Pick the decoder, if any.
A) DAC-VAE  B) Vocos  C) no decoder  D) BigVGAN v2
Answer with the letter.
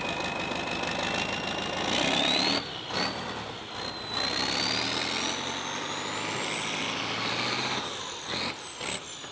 C